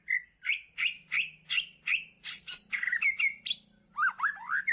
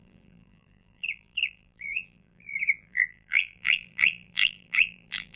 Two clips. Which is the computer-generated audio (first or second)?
second